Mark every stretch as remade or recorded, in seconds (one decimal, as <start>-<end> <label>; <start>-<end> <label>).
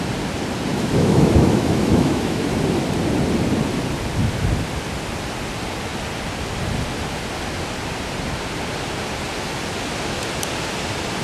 0.0-0.7 recorded; 0.7-2.4 remade; 2.4-11.2 recorded